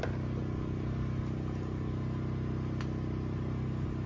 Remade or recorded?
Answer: recorded